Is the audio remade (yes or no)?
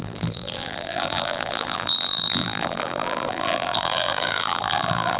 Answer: yes